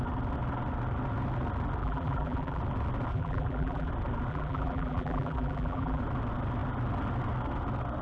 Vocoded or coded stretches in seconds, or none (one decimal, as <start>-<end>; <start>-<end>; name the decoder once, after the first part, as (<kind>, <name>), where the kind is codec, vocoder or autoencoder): 1.8-2.6 (vocoder, BigVGAN v2); 3.1-3.9; 4.3-6.0